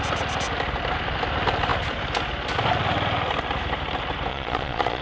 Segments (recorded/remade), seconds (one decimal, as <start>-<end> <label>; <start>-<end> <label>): 0.0-4.3 recorded; 4.3-5.0 remade